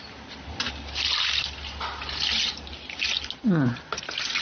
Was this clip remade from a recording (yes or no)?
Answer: no